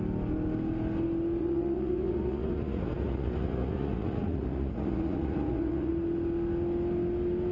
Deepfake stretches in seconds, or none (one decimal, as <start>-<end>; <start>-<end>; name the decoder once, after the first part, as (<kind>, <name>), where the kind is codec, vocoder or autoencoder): 1.4-5.9 (vocoder, Vocos)